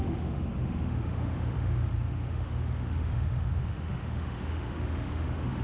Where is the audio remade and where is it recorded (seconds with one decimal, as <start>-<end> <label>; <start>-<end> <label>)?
0.0-5.6 remade